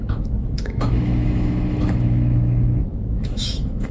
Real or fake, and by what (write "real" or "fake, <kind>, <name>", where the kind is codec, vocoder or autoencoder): fake, autoencoder, DAC-VAE